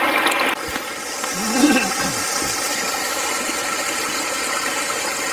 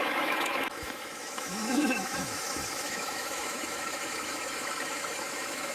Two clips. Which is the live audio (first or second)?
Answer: first